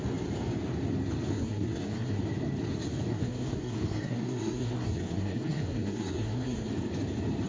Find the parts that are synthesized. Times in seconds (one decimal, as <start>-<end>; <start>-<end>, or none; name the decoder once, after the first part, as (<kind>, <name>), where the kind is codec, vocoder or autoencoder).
1.3-2.2 (codec, SNAC); 3.1-6.7